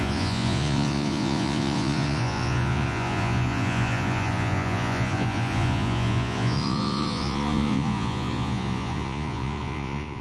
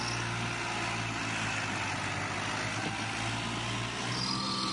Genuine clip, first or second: second